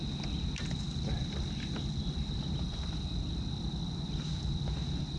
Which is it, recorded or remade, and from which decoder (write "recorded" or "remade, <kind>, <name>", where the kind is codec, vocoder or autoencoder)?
recorded